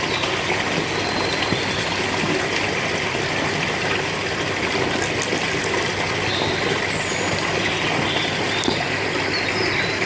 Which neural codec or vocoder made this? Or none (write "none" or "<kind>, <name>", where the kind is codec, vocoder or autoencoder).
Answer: none